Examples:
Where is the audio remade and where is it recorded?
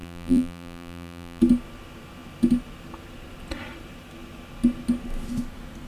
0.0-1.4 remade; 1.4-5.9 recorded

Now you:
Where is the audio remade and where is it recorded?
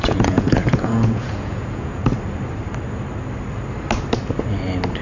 0.0-2.0 remade; 2.0-5.0 recorded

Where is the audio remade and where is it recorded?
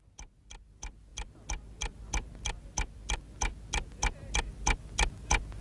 0.0-5.6 recorded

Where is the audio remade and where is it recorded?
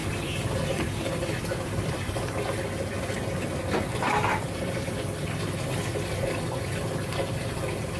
0.0-8.0 recorded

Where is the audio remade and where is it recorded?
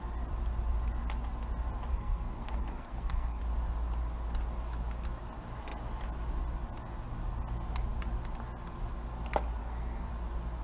0.0-1.9 recorded; 1.9-3.4 remade; 3.4-9.6 recorded; 9.6-10.1 remade; 10.1-10.6 recorded